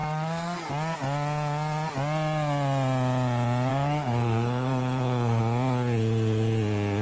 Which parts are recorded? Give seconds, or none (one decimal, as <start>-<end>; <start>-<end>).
0.7-3.7; 5.4-7.0